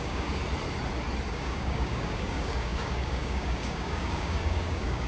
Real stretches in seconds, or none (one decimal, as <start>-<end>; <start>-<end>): 0.4-1.3